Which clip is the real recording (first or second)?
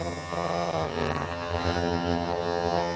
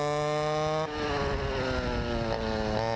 second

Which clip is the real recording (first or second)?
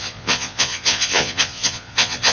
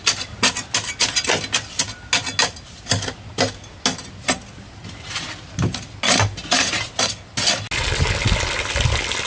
second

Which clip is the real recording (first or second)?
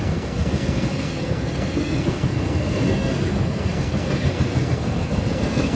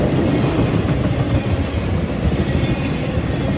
second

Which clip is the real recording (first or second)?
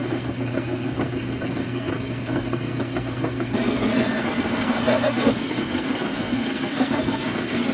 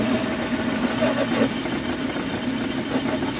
second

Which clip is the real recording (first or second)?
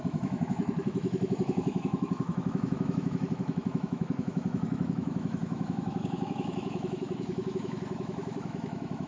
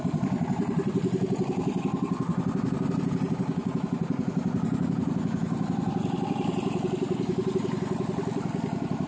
second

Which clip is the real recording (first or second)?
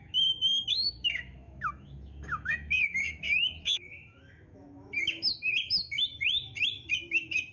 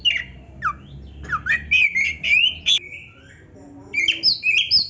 second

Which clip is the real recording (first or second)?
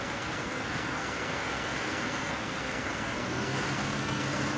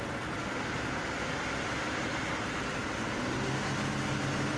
second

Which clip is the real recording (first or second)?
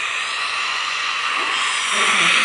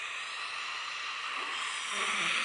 second